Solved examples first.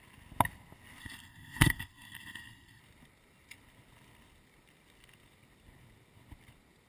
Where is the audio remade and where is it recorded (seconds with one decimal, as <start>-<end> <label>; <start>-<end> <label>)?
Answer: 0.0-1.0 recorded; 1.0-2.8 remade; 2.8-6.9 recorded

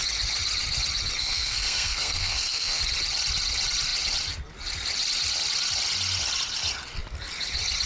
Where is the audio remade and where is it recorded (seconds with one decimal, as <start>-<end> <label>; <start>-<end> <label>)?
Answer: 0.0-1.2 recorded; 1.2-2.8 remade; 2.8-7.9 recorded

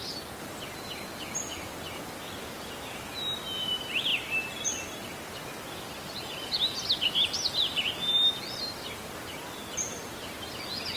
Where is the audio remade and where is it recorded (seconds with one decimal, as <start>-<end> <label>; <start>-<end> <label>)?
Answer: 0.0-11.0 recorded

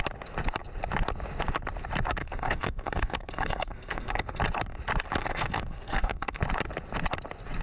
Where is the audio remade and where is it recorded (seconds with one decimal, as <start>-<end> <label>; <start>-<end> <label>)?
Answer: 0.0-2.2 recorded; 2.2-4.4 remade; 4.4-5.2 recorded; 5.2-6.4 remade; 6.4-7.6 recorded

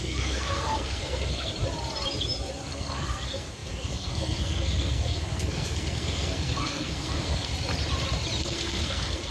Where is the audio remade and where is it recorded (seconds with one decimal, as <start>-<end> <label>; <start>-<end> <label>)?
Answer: 0.0-1.5 remade; 1.5-2.7 recorded; 2.7-7.5 remade; 7.5-8.4 recorded; 8.4-9.3 remade

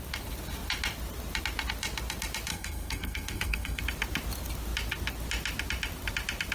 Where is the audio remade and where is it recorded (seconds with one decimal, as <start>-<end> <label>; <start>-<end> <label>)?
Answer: 0.0-2.5 recorded; 2.5-3.8 remade; 3.8-6.5 recorded

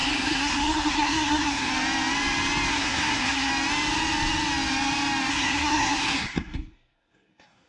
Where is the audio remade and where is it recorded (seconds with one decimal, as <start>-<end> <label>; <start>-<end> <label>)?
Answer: 0.0-1.7 remade; 1.7-2.7 recorded; 2.7-3.5 remade; 3.5-5.3 recorded; 5.3-7.7 remade